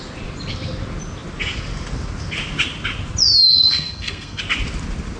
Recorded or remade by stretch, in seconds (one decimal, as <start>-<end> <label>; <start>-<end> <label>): 0.0-3.5 recorded; 3.5-4.4 remade; 4.4-5.2 recorded